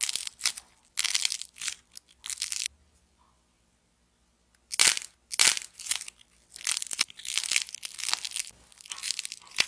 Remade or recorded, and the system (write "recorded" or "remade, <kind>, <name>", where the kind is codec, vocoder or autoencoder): recorded